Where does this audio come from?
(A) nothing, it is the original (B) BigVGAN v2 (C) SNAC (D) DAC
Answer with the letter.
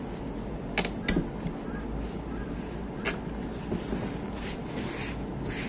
A